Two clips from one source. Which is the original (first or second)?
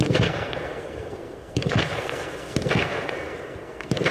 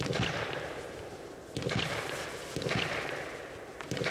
second